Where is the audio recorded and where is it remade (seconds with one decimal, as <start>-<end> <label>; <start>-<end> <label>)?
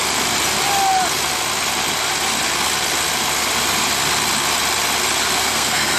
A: 0.0-5.4 recorded; 5.4-6.0 remade